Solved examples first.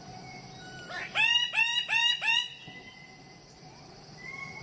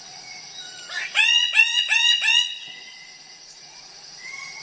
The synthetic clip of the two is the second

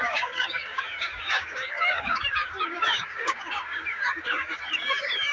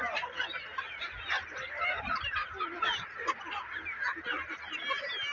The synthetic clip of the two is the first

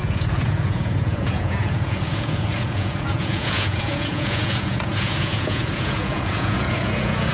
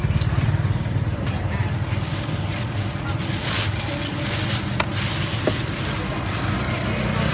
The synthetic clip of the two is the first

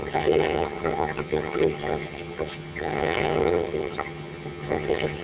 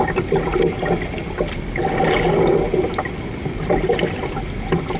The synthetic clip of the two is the first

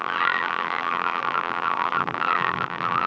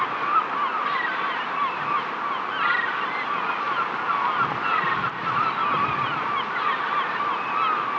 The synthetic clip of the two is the first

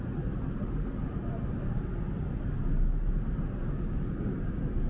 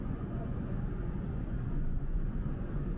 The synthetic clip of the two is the second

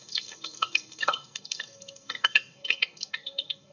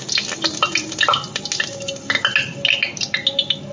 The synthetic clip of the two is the first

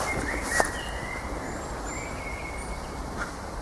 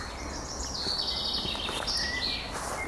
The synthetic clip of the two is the first